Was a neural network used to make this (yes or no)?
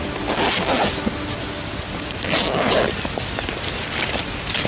no